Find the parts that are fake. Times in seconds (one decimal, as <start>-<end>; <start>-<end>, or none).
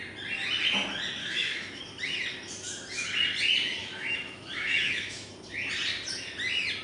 1.2-1.8; 3.8-5.3